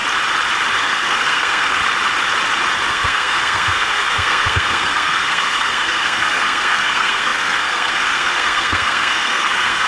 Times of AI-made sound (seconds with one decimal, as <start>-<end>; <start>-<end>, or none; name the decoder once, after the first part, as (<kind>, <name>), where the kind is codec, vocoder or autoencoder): 0.8-1.8 (codec, SNAC); 2.9-9.9